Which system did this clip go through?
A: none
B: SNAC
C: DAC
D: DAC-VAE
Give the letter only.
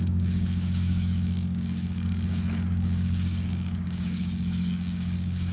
C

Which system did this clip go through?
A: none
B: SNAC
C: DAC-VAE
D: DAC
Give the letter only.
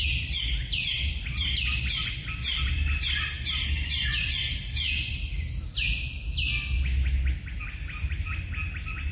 A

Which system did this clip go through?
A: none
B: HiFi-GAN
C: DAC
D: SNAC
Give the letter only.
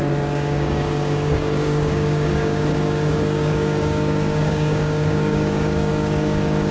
C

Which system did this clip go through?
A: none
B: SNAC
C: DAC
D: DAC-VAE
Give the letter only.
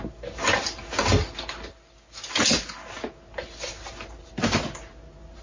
A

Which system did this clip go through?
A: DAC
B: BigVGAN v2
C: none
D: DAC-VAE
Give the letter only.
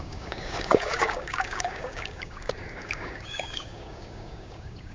A